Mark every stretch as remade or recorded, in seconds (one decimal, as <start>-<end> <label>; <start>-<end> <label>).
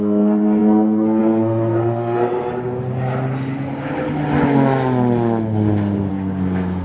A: 0.0-2.4 remade; 2.4-6.1 recorded; 6.1-6.8 remade